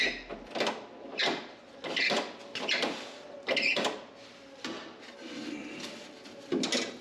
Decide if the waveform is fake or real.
real